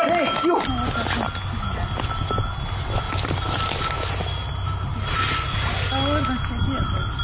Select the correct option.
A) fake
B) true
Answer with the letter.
B